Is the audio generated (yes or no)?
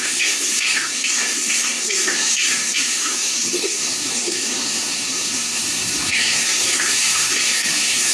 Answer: yes